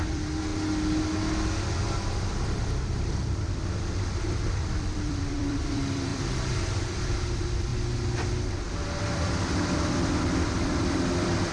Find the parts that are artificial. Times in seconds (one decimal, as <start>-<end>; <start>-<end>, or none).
0.0-0.5; 2.3-7.7; 9.0-11.5